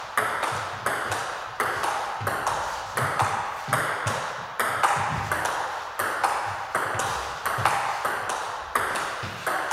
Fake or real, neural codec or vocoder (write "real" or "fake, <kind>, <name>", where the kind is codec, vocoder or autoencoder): fake, vocoder, BigVGAN v2